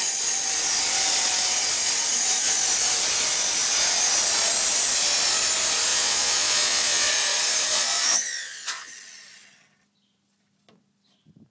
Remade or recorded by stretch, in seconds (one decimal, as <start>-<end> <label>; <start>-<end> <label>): 0.0-5.9 recorded; 5.9-7.1 remade; 7.1-7.7 recorded; 7.7-8.9 remade; 8.9-11.5 recorded